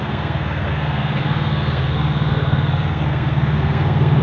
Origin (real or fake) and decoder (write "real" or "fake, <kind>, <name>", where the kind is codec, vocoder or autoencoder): fake, codec, SNAC